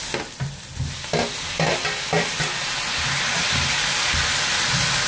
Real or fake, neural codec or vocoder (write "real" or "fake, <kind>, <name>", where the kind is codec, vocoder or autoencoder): real